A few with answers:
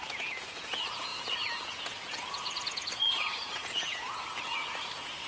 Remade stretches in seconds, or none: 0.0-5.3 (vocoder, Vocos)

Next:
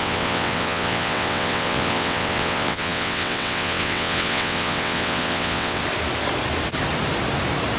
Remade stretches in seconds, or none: 0.0-5.8 (vocoder, WaveNeXt)

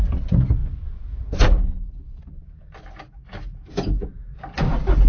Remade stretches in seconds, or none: none